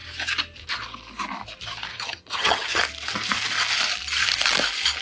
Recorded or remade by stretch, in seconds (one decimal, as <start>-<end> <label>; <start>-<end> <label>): 0.0-1.9 recorded; 1.9-2.8 remade; 2.8-5.0 recorded